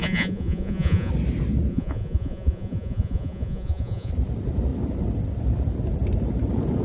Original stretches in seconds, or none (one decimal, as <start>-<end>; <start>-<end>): 1.1-1.7; 4.1-6.8